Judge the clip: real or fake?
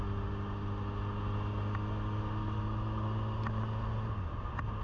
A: real